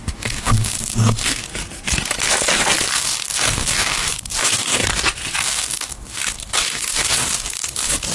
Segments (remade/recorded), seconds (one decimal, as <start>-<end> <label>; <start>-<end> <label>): 0.0-1.5 remade; 1.5-2.9 recorded; 2.9-4.8 remade; 4.8-5.4 recorded; 5.4-8.1 remade